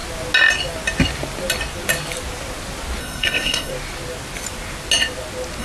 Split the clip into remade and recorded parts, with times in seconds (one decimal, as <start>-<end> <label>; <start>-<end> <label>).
0.0-3.0 recorded; 3.0-3.7 remade; 3.7-5.6 recorded